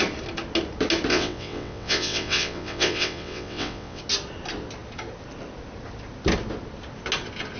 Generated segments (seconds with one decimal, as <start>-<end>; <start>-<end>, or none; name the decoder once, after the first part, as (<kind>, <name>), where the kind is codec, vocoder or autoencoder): 1.1-4.0 (vocoder, WaveNeXt)